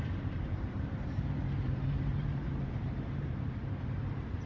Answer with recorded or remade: remade